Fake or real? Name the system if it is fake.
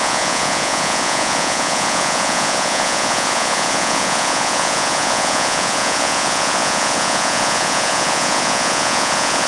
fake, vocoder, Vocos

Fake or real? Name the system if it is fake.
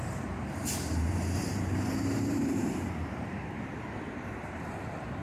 fake, vocoder, BigVGAN v2